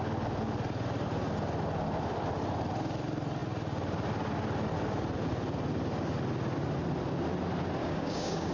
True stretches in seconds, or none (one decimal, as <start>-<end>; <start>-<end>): 0.0-7.8